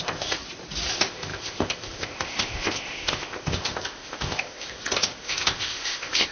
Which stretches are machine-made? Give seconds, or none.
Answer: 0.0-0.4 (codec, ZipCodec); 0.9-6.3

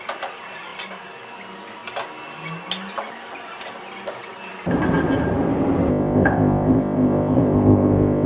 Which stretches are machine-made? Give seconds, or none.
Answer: 5.9-8.3 (codec, ZipCodec)